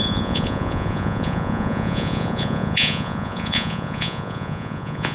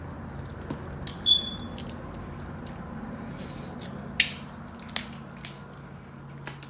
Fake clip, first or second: first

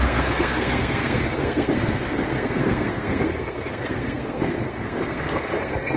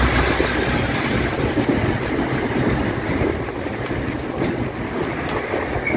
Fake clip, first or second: first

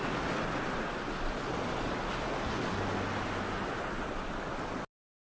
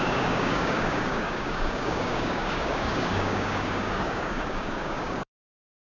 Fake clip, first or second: second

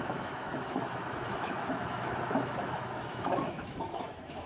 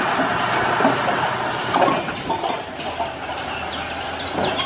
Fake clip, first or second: first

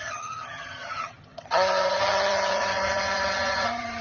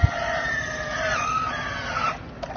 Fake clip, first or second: first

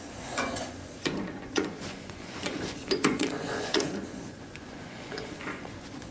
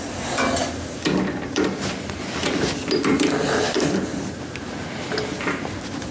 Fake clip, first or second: first